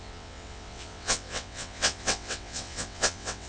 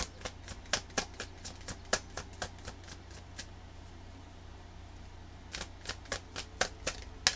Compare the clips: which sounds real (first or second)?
second